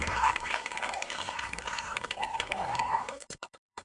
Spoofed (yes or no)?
yes